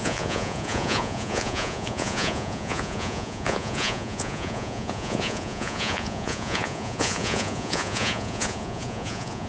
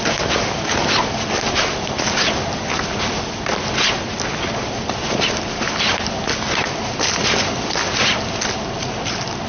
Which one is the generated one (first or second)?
first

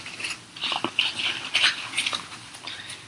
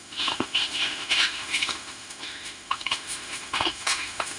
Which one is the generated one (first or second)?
second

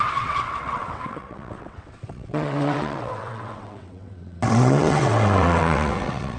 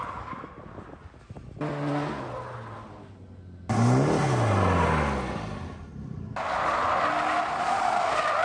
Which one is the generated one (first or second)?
first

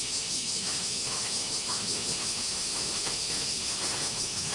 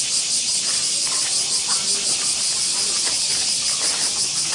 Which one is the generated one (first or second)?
first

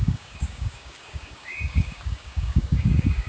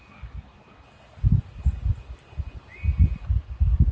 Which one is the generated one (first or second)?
first